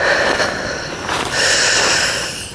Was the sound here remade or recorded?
remade